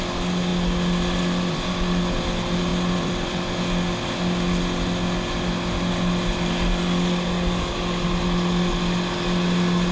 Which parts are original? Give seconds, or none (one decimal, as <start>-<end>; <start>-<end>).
0.0-2.7; 3.4-9.9